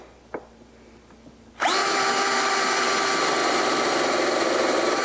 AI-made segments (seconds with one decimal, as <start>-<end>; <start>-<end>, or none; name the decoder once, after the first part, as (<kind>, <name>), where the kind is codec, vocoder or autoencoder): 1.8-2.8 (vocoder, BigVGAN v2); 3.4-5.0